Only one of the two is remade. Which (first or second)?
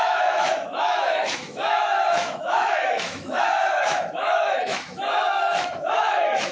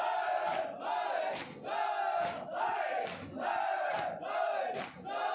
first